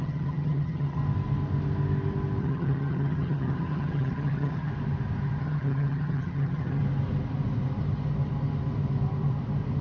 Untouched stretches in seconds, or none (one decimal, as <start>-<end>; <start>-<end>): 1.0-2.4; 4.7-5.4; 6.8-9.8